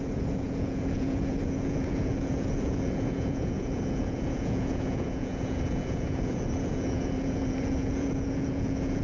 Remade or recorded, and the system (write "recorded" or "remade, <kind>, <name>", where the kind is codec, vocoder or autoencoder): remade, vocoder, Vocos